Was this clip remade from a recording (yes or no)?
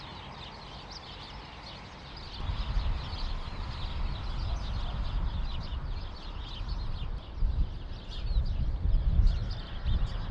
no